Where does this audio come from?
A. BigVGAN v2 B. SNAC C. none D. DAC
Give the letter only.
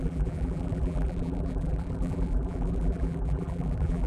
A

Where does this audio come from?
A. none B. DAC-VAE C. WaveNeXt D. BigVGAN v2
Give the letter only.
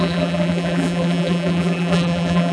D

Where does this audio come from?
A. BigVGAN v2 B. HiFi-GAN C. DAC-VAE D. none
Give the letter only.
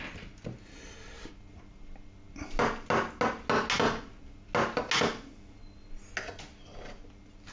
D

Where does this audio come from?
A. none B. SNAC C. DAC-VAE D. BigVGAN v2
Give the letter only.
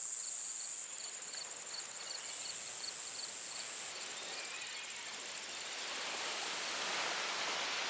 A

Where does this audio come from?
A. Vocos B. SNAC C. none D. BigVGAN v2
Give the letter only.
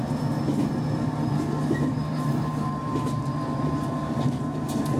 D